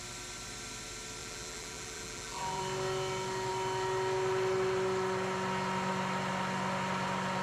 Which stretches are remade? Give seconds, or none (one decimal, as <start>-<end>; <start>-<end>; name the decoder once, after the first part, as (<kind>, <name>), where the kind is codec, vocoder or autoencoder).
1.2-2.6 (vocoder, BigVGAN v2)